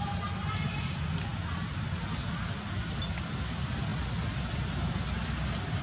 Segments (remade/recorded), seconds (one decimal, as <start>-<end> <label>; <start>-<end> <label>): 0.0-5.8 recorded

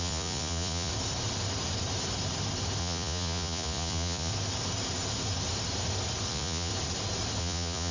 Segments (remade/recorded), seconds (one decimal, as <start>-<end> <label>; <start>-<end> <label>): 0.0-0.9 remade; 0.9-2.8 recorded; 2.8-4.3 remade; 4.3-6.3 recorded; 6.3-6.7 remade; 6.7-7.4 recorded; 7.4-7.9 remade

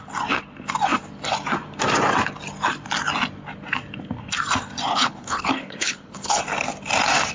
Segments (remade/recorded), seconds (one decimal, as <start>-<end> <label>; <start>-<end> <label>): 0.0-4.9 recorded; 4.9-6.4 remade; 6.4-7.3 recorded

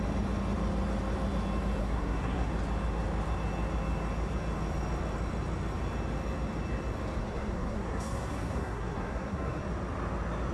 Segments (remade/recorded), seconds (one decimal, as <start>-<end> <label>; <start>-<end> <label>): 0.0-1.8 recorded; 1.8-2.5 remade; 2.5-7.2 recorded; 7.2-9.6 remade; 9.6-10.5 recorded

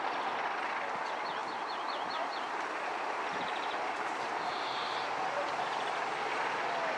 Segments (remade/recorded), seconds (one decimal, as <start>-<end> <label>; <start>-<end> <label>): 0.0-1.4 recorded; 1.4-4.1 remade; 4.1-7.0 recorded

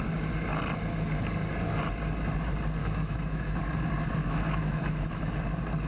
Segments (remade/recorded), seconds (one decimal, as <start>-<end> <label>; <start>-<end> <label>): 0.0-2.8 recorded; 2.8-3.6 remade; 3.6-4.2 recorded; 4.2-5.4 remade; 5.4-5.9 recorded

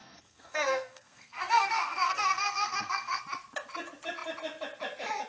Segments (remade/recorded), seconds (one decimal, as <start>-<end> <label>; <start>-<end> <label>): 0.0-3.2 remade; 3.2-5.3 recorded

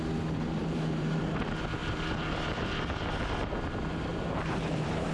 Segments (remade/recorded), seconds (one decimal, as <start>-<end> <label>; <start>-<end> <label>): 0.0-0.6 recorded; 0.6-1.2 remade; 1.2-1.8 recorded; 1.8-2.7 remade; 2.7-4.1 recorded; 4.1-5.1 remade